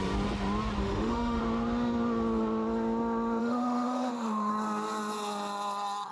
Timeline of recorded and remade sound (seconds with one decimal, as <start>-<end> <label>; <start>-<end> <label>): 0.0-0.8 recorded; 0.8-1.4 remade; 1.4-3.4 recorded; 3.4-4.5 remade; 4.5-6.1 recorded